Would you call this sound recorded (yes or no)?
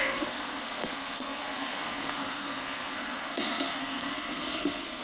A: no